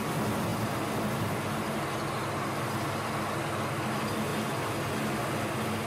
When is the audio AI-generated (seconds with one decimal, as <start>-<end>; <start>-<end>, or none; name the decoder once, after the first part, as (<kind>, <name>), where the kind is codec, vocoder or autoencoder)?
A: none